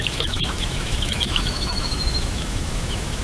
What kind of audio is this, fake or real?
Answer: fake